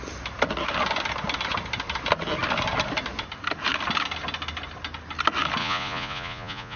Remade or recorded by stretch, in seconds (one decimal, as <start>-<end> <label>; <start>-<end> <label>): 0.0-5.6 recorded; 5.6-6.8 remade